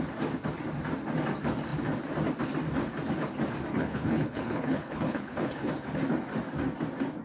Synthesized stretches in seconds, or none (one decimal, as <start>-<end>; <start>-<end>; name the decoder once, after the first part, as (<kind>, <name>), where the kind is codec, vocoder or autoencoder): 3.7-5.7 (codec, HILCodec)